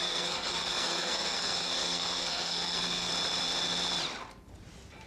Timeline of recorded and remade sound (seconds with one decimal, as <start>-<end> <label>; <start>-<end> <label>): 0.0-3.1 remade; 3.1-5.1 recorded